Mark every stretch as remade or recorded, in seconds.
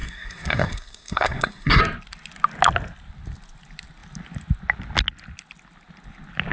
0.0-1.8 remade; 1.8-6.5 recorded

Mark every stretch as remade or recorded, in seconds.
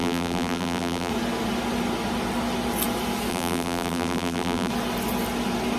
0.0-1.1 remade; 1.1-3.3 recorded; 3.3-4.7 remade; 4.7-5.8 recorded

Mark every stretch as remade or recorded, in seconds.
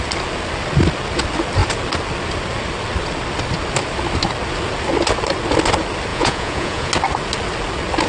0.0-6.1 recorded; 6.1-6.9 remade; 6.9-8.1 recorded